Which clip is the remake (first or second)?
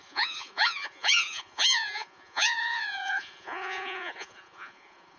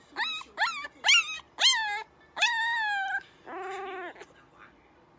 first